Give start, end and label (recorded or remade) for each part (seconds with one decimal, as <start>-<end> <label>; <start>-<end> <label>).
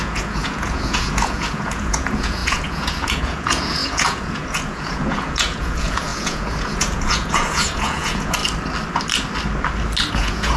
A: 0.0-8.4 remade; 8.4-10.1 recorded; 10.1-10.6 remade